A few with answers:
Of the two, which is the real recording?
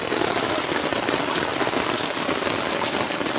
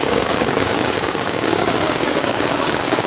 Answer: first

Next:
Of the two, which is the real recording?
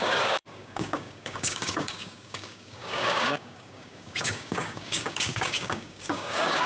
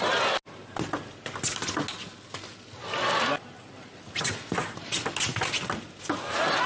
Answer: second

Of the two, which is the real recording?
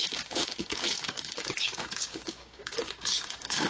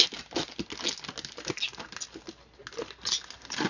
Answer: second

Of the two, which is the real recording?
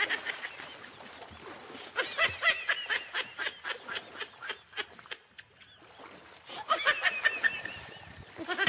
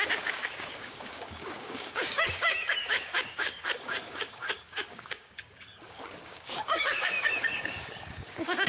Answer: first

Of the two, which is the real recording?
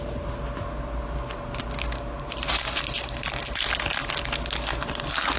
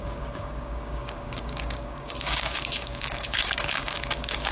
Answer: first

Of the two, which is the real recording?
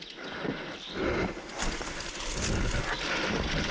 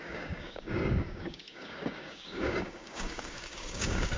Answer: first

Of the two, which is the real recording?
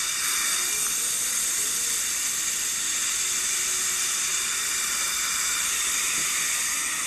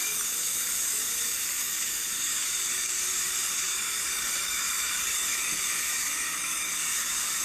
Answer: first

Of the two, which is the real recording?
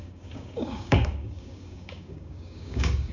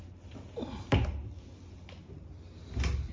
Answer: second